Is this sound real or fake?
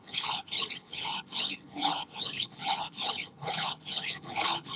fake